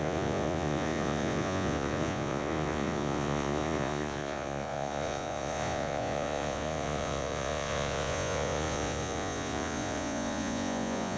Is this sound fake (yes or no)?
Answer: yes